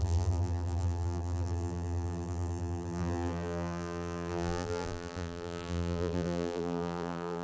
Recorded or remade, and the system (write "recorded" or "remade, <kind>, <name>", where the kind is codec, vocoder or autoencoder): remade, vocoder, BigVGAN v2